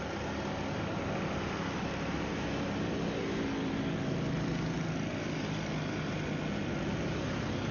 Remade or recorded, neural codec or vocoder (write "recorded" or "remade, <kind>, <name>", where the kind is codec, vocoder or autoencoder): recorded